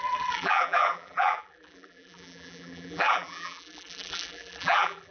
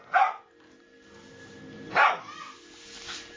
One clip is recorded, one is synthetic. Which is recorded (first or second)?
second